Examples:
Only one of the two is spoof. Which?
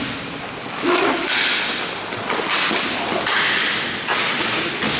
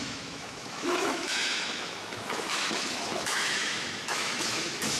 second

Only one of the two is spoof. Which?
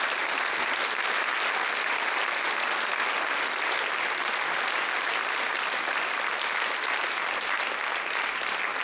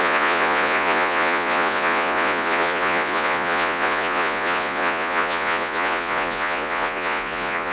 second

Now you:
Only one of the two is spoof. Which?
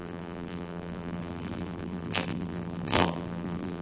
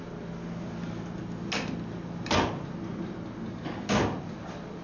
first